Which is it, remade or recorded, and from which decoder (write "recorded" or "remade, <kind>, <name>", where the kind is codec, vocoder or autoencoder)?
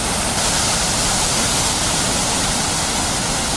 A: recorded